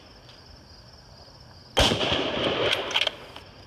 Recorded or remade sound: recorded